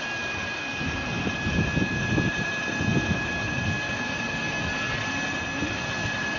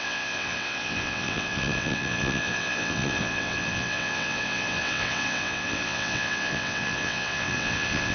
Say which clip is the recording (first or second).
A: first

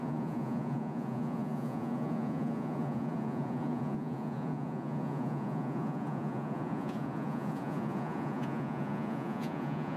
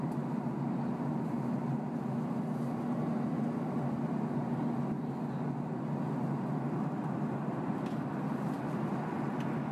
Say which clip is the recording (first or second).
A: second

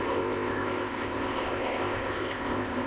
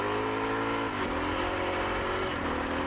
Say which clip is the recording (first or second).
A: second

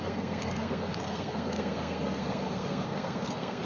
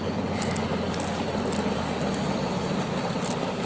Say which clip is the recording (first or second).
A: second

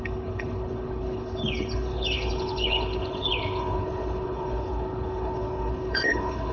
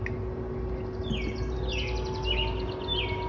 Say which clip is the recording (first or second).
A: second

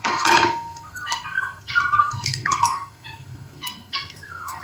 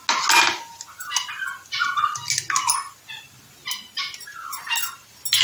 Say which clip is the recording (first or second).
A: second